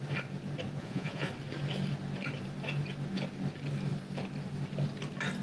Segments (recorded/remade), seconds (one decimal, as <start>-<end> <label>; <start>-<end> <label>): 0.0-0.8 recorded; 0.8-1.3 remade; 1.3-5.4 recorded